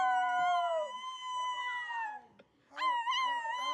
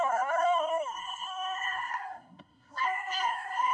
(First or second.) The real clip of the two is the first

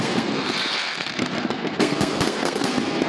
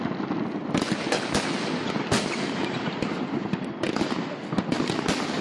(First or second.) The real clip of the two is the second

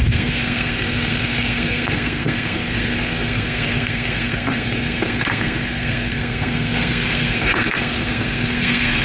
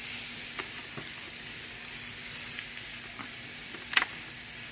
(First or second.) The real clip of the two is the second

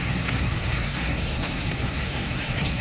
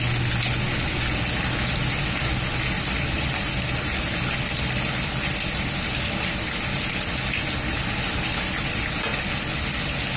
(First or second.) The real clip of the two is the second